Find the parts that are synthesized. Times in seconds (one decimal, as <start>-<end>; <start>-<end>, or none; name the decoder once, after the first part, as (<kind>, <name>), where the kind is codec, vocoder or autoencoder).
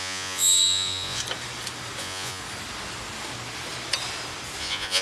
0.0-1.2 (vocoder, Vocos); 2.0-2.4; 4.6-5.0